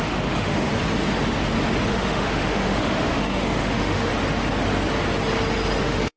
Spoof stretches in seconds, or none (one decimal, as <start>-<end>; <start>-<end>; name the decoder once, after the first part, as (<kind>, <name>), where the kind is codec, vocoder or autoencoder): 0.0-0.7 (autoencoder, DAC-VAE); 1.9-4.1; 5.8-6.2